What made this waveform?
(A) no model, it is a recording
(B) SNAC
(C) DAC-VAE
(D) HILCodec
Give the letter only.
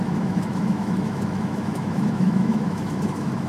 C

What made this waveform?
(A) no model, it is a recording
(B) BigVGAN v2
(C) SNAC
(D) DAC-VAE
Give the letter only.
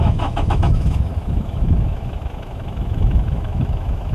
D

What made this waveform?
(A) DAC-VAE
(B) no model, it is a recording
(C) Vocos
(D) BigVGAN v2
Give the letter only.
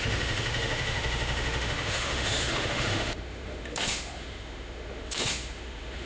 A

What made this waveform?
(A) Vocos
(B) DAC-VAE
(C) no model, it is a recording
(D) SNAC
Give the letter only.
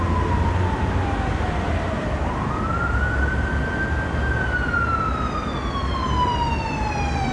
C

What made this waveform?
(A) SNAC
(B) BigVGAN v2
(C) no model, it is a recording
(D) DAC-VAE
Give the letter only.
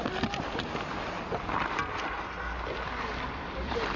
C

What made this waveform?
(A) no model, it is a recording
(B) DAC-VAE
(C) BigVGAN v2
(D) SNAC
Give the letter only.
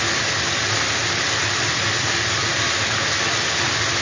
A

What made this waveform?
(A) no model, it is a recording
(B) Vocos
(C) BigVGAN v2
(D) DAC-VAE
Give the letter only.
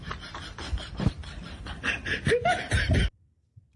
A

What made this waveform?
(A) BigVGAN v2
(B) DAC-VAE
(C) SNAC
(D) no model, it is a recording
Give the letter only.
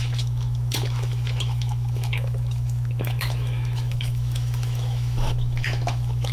B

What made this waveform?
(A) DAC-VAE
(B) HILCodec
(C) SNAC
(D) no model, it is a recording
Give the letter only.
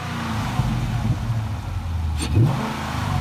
D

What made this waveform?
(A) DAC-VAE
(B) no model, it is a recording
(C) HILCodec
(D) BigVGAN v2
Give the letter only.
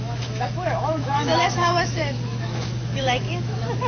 A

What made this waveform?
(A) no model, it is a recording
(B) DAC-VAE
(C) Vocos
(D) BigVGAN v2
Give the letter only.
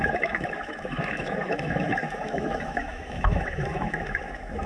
B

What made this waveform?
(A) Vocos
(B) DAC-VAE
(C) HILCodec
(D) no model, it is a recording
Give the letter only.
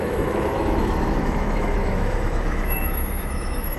B